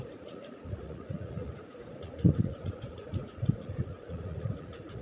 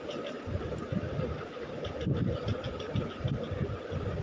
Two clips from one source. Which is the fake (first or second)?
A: first